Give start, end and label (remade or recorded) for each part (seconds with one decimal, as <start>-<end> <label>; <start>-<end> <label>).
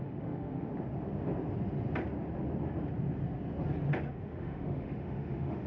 0.0-0.7 remade; 0.7-4.1 recorded; 4.1-5.7 remade